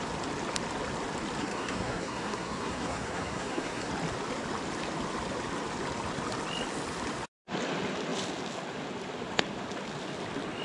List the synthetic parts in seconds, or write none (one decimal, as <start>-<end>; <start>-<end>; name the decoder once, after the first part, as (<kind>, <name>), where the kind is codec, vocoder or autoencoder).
1.4-3.9 (codec, SNAC)